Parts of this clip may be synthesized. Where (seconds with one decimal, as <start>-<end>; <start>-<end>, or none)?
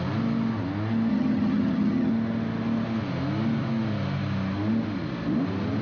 1.1-2.1